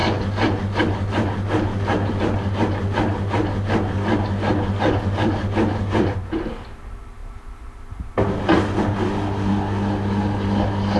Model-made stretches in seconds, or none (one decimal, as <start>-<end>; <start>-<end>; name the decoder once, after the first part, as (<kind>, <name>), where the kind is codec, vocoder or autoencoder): none

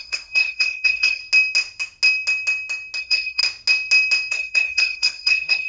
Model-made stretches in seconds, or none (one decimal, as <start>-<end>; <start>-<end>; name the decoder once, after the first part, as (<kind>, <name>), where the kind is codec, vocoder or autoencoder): 0.0-1.2 (codec, SNAC); 3.0-3.4; 4.3-5.7